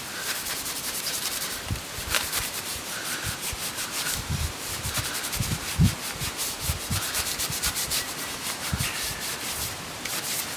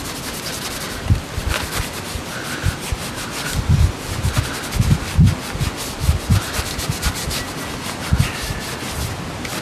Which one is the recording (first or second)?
second